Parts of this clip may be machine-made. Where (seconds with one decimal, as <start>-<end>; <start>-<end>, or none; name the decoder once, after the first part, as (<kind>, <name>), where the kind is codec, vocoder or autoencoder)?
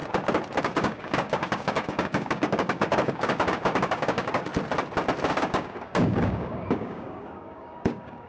0.6-4.5 (codec, DAC); 5.3-8.3